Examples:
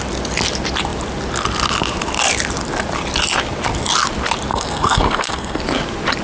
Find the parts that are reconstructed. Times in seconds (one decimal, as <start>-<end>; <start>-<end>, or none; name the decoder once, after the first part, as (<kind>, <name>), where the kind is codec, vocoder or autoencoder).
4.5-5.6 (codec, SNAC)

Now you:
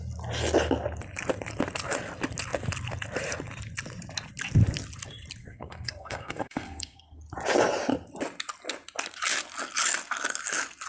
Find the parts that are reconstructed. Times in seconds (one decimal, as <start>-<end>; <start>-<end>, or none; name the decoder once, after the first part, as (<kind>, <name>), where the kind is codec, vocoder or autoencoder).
5.4-7.2 (codec, SNAC)

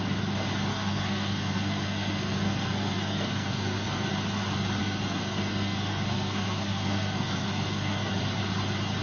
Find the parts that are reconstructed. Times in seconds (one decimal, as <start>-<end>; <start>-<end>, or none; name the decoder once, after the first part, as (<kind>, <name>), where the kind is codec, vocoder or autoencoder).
0.7-4.1 (codec, SNAC); 4.8-8.1

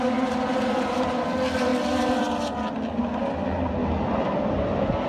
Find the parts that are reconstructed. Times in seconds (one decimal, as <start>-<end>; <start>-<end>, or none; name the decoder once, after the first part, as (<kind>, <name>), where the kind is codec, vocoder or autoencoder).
none

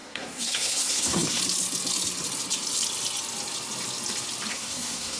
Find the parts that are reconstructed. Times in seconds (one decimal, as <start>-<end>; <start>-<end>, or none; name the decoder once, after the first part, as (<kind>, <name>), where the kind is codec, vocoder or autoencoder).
0.0-1.4 (codec, SNAC); 4.5-5.2

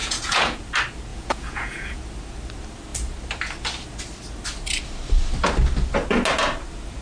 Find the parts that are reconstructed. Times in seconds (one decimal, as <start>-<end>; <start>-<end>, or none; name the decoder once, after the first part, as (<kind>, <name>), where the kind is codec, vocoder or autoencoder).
0.0-0.6 (vocoder, Vocos); 1.1-2.0